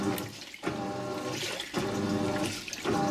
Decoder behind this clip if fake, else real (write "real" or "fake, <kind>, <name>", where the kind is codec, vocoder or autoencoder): real